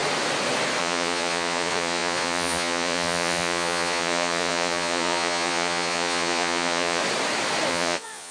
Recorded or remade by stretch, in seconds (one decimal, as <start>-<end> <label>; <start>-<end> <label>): 0.0-0.8 recorded; 0.8-7.0 remade; 7.0-7.7 recorded; 7.7-8.3 remade